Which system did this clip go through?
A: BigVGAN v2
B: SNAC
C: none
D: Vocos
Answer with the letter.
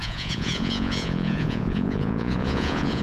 D